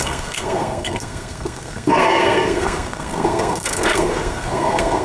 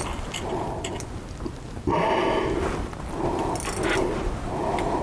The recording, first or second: second